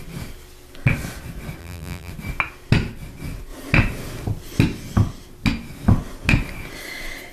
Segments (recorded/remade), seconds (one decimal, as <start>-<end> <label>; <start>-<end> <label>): 0.0-1.6 recorded; 1.6-2.1 remade; 2.1-7.3 recorded